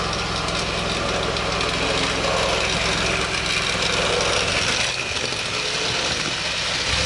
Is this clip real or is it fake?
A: real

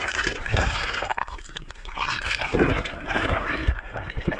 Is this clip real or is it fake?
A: fake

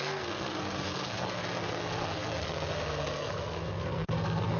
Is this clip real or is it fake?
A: fake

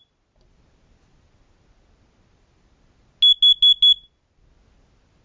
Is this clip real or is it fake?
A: real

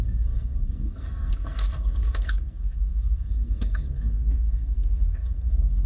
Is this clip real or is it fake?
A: fake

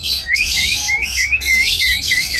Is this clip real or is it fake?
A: fake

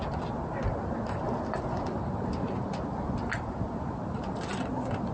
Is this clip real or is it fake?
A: real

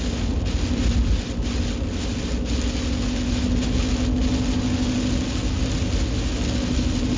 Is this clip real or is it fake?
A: real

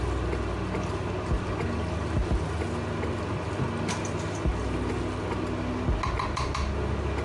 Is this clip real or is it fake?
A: real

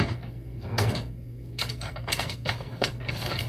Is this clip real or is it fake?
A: fake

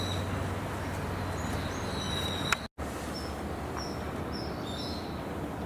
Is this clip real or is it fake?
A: real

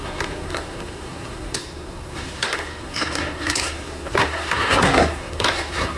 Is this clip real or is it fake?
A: fake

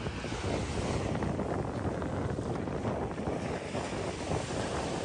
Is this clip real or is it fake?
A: real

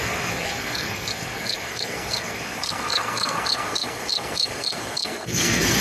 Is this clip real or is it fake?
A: fake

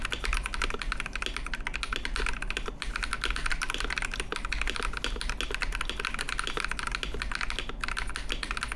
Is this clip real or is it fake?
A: real